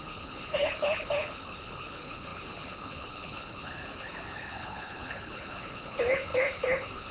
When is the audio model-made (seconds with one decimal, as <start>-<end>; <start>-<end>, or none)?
0.0-7.1